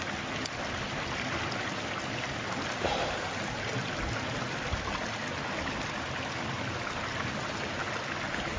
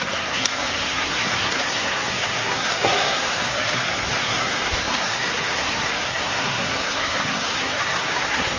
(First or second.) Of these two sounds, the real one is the first